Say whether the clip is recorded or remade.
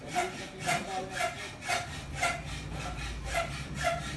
recorded